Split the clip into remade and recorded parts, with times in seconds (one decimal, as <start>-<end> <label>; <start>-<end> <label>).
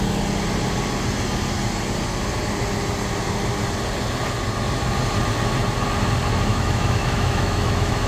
0.0-6.5 recorded; 6.5-8.1 remade